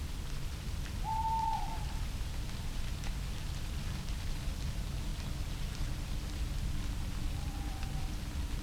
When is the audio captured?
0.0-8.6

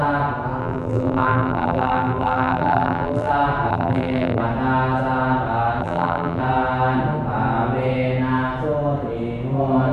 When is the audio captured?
0.0-0.6; 3.3-3.7; 4.4-5.8; 6.4-9.9

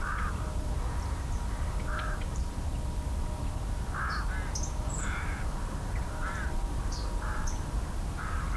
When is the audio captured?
2.7-4.8

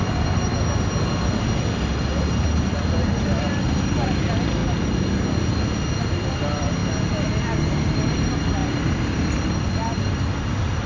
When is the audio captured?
0.5-2.5; 4.6-6.0; 6.8-7.4

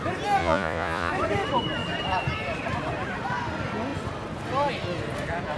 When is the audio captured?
0.0-0.4; 1.1-5.6

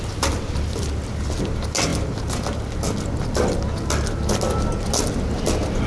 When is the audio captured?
0.0-5.9

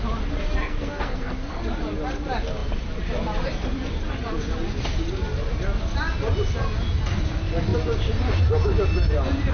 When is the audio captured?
0.0-0.6; 1.6-9.5